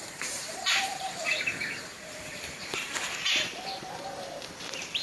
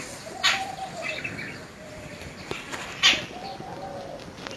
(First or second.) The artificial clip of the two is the first